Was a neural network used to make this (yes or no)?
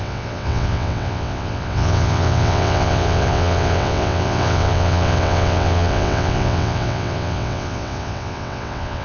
yes